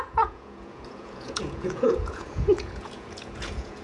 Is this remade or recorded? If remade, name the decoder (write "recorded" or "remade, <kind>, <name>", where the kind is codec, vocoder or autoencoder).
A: remade, vocoder, Vocos